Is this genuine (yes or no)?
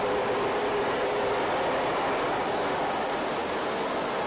yes